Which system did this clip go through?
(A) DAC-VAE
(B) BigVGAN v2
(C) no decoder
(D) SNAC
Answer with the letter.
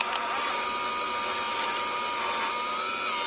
C